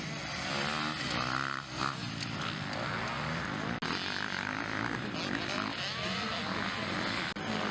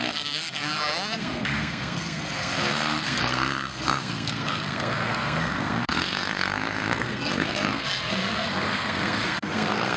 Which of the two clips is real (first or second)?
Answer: first